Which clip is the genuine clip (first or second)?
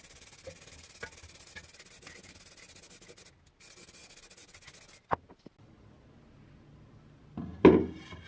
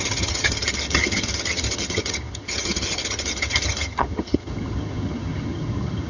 first